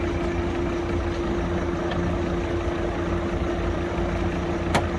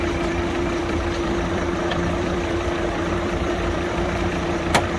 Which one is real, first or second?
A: first